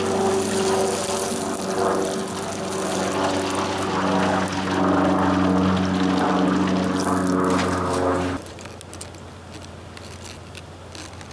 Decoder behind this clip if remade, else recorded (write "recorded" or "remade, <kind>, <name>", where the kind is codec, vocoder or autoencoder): recorded